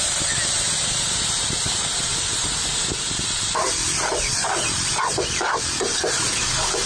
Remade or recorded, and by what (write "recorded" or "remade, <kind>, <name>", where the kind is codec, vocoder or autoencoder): remade, vocoder, BigVGAN v2